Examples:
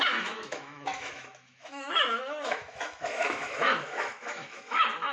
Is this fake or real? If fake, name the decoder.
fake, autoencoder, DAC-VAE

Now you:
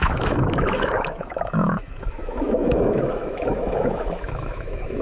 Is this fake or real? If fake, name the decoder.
fake, autoencoder, DAC-VAE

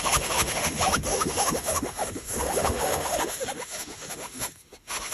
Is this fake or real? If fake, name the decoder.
fake, autoencoder, DAC-VAE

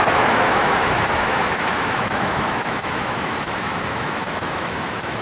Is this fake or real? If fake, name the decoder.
fake, autoencoder, DAC-VAE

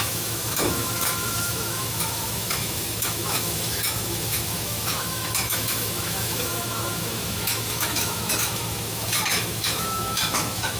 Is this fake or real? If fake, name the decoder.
fake, autoencoder, DAC-VAE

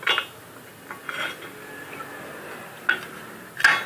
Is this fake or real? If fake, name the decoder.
real